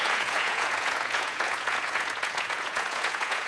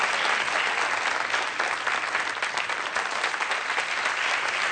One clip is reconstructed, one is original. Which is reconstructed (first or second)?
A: first